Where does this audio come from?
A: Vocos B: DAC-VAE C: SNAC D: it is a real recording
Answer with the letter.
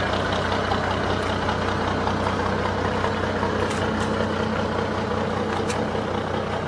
D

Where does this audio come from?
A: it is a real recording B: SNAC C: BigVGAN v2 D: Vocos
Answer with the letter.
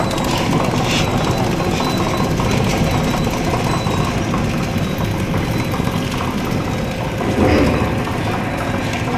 A